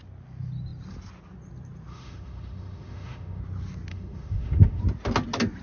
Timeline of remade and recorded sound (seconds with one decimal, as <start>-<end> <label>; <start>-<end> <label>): 0.0-1.9 recorded; 1.9-3.4 remade; 3.4-3.9 recorded; 3.9-4.8 remade; 4.8-5.6 recorded